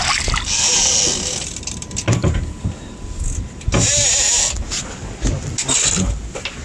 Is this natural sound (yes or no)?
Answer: yes